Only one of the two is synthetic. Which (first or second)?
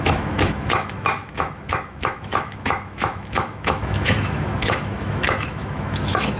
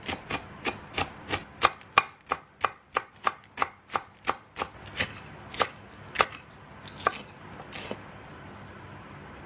first